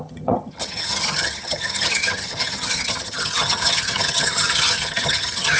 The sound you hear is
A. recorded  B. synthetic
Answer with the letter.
B